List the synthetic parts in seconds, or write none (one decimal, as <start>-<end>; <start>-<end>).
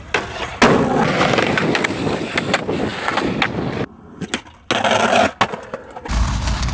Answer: none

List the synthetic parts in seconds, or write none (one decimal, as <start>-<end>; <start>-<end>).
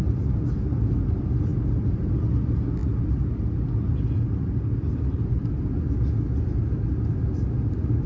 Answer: none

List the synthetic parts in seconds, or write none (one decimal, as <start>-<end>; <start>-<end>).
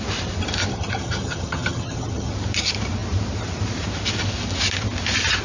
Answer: 0.7-2.3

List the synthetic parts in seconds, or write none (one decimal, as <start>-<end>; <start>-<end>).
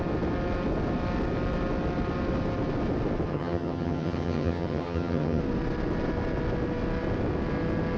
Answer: 3.3-5.4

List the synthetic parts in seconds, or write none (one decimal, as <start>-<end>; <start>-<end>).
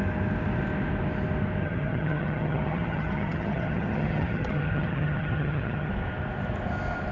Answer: 1.6-5.9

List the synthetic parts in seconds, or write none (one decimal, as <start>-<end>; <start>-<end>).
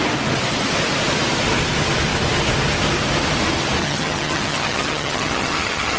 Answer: 3.8-6.0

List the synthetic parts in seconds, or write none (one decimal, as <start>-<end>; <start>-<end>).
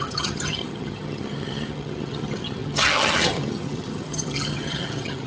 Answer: 0.0-5.3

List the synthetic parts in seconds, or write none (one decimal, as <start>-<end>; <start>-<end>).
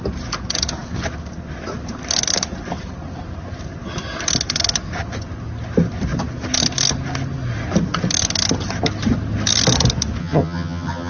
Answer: 10.2-11.1